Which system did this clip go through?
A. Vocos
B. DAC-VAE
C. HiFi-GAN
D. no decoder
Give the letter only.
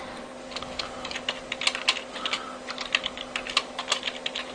D